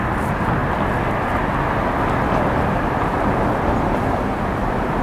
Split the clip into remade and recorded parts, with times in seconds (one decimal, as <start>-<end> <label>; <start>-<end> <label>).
0.0-5.0 recorded